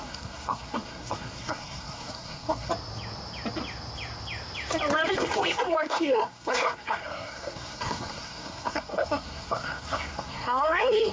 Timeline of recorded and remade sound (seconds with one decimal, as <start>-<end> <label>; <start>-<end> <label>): 0.0-2.7 remade; 2.7-5.1 recorded; 5.1-11.1 remade